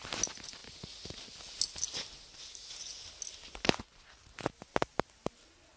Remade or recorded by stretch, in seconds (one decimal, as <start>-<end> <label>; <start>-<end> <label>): 0.0-5.8 recorded